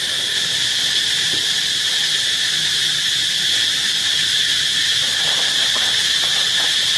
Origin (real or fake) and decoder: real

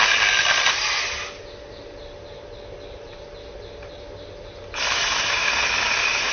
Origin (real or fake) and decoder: real